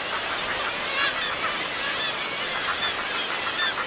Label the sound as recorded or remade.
recorded